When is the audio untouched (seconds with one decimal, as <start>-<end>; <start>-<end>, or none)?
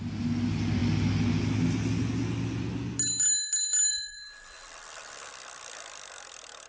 0.0-3.9; 5.3-6.7